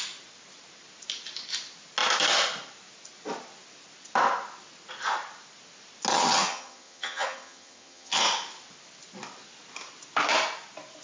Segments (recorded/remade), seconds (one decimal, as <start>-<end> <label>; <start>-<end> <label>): 0.0-6.1 recorded; 6.1-8.2 remade; 8.2-11.0 recorded